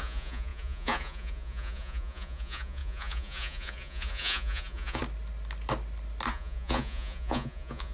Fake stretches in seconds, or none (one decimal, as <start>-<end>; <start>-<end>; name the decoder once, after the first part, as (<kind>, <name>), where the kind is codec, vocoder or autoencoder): 0.0-5.0 (vocoder, Vocos); 6.3-7.9

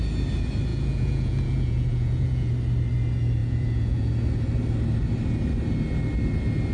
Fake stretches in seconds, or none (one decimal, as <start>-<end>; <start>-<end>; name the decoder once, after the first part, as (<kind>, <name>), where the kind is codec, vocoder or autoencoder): 0.7-2.5 (vocoder, Vocos); 3.4-4.1

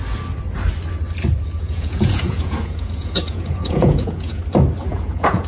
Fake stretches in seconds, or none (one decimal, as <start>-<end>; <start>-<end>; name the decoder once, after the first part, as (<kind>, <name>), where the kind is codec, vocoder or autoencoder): 1.6-4.4 (vocoder, Vocos); 4.9-5.5

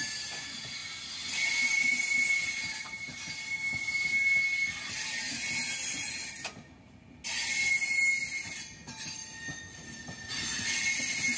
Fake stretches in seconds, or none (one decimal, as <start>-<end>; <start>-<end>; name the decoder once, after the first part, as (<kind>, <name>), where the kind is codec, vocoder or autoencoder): none